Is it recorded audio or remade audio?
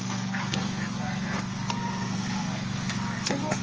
remade